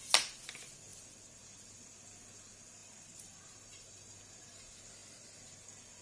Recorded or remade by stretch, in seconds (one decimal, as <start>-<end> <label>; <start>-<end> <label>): 0.0-2.8 recorded; 2.8-4.6 remade; 4.6-6.0 recorded